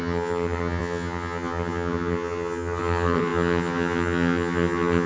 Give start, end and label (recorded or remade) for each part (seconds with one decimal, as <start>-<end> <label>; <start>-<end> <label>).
0.0-5.1 remade

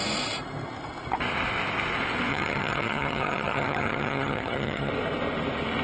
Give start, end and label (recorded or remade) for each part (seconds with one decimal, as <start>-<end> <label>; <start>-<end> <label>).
0.0-2.3 recorded; 2.3-4.9 remade; 4.9-5.8 recorded

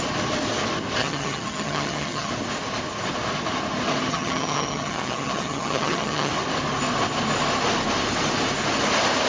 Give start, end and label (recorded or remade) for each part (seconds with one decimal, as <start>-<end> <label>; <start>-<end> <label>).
0.0-1.0 recorded; 1.0-2.3 remade; 2.3-4.1 recorded; 4.1-6.3 remade; 6.3-9.3 recorded